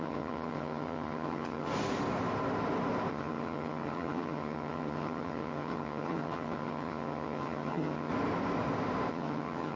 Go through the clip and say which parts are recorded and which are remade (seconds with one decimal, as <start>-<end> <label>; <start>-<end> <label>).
0.0-1.7 remade; 1.7-3.1 recorded; 3.1-8.1 remade; 8.1-9.1 recorded; 9.1-9.8 remade

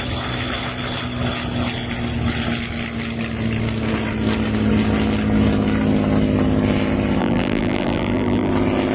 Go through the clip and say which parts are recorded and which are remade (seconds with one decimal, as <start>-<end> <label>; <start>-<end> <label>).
0.0-7.2 recorded; 7.2-8.5 remade; 8.5-8.9 recorded

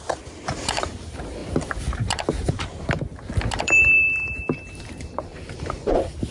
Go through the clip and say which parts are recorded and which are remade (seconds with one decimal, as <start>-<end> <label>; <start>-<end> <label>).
0.0-1.4 remade; 1.4-1.9 recorded; 1.9-3.1 remade; 3.1-3.6 recorded; 3.6-5.3 remade; 5.3-6.3 recorded

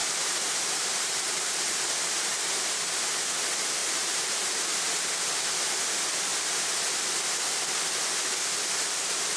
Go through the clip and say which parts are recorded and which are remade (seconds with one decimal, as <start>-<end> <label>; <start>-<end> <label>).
0.0-1.6 remade; 1.6-3.8 recorded; 3.8-4.6 remade; 4.6-9.4 recorded

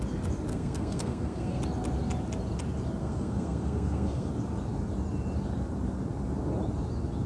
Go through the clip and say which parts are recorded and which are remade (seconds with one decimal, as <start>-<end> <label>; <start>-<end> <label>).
0.0-0.5 recorded; 0.5-1.6 remade; 1.6-3.0 recorded; 3.0-4.3 remade; 4.3-7.3 recorded

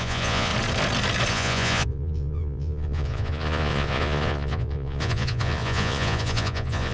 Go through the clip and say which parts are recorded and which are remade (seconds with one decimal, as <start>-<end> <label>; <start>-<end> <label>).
0.0-0.5 remade; 0.5-1.3 recorded; 1.3-6.9 remade

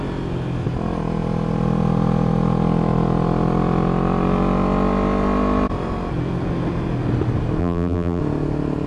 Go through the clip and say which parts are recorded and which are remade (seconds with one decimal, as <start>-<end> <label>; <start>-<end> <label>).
0.0-7.6 recorded; 7.6-8.2 remade; 8.2-8.9 recorded